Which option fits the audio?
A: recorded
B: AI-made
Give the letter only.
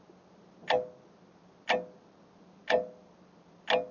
A